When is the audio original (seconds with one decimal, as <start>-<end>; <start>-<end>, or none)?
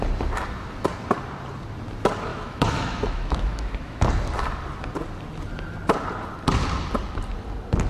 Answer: 0.0-2.3; 4.0-7.9